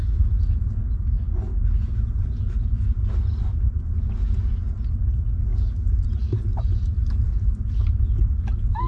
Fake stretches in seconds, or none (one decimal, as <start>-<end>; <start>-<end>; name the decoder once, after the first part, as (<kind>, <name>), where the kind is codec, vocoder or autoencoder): none